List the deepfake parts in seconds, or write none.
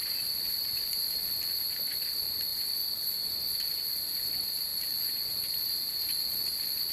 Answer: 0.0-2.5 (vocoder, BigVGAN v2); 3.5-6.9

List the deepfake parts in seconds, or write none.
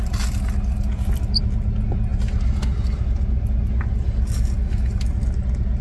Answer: none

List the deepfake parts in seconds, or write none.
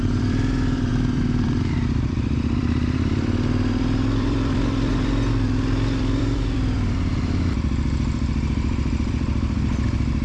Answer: 0.0-10.2 (vocoder, BigVGAN v2)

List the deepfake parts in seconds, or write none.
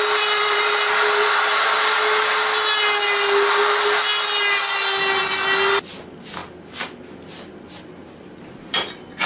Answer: 0.4-1.6 (vocoder, BigVGAN v2)